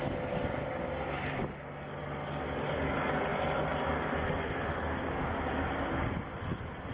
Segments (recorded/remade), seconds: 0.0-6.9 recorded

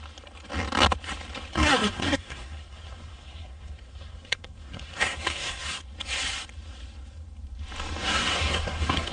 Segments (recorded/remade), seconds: 0.0-1.5 recorded; 1.5-5.8 remade; 5.8-8.0 recorded; 8.0-9.1 remade

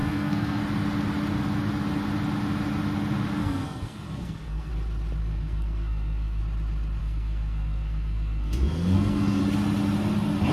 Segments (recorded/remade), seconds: 0.0-0.6 remade; 0.6-3.4 recorded; 3.4-4.7 remade; 4.7-5.2 recorded; 5.2-6.4 remade; 6.4-7.0 recorded; 7.0-9.4 remade; 9.4-10.5 recorded